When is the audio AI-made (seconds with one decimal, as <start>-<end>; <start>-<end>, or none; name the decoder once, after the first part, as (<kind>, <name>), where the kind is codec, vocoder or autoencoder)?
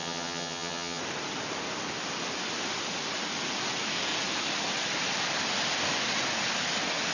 0.0-1.0 (vocoder, HiFi-GAN)